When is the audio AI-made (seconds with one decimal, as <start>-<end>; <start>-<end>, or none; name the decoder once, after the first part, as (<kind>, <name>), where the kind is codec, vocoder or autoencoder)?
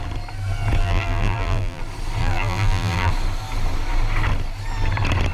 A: 0.8-1.8 (vocoder, BigVGAN v2); 2.2-3.1